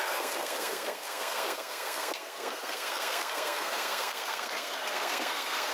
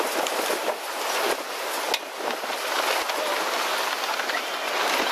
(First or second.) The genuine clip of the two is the second